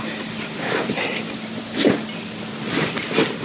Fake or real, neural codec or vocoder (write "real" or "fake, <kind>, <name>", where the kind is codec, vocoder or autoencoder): real